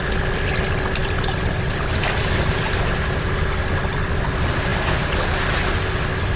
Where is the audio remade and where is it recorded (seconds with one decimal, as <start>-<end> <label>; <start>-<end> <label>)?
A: 0.0-6.4 recorded